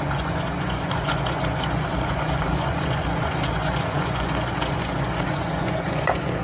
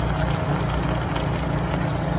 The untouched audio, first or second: second